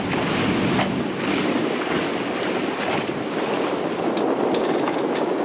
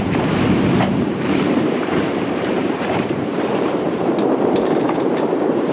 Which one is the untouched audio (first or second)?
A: first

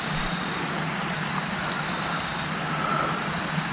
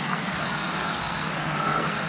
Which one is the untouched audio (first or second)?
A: first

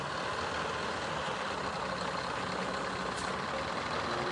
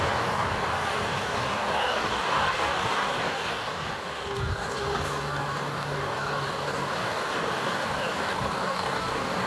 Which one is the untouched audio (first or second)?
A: first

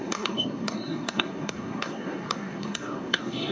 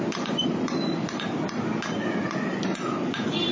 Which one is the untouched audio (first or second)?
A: second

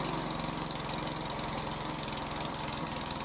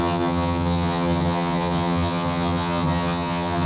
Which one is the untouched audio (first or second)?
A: first